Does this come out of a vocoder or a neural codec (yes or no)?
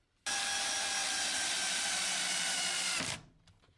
no